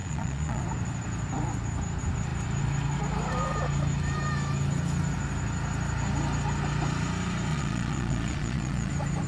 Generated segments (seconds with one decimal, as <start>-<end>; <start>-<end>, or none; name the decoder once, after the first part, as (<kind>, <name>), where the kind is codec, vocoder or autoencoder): 0.0-0.6 (vocoder, Vocos); 7.5-8.9